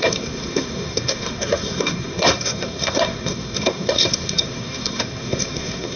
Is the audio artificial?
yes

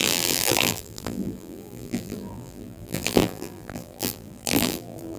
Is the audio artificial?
yes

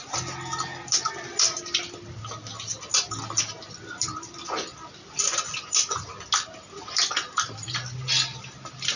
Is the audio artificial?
no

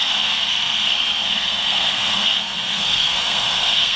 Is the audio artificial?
yes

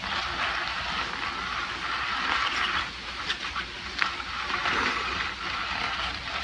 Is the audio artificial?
no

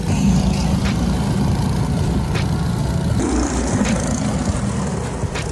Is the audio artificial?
no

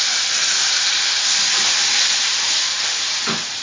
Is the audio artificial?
no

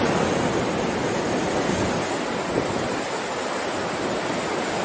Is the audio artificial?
no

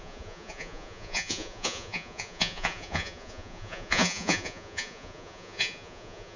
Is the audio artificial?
yes